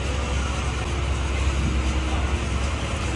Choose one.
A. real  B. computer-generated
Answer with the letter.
A